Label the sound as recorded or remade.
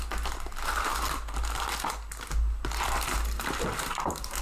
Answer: recorded